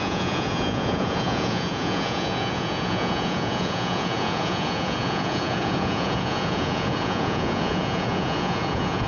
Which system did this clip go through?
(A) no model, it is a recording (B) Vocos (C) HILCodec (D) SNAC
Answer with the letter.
B